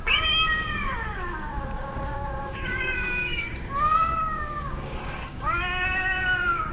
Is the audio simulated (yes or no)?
yes